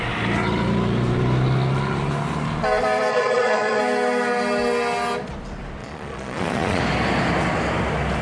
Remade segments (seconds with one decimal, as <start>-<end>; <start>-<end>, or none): 3.1-3.8; 5.8-6.8